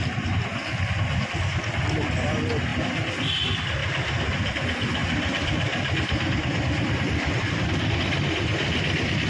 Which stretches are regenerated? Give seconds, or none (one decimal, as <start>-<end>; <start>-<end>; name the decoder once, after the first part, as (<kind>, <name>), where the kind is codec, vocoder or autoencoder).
2.7-3.3 (vocoder, BigVGAN v2); 5.0-8.6